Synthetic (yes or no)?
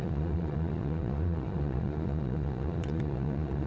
yes